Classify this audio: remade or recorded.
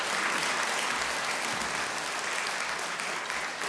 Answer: recorded